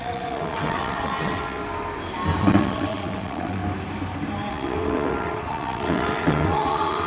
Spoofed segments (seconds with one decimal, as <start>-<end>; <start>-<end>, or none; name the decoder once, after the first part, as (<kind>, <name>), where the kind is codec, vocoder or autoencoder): 0.0-1.6 (vocoder, WaveNeXt); 2.4-3.6; 4.5-7.1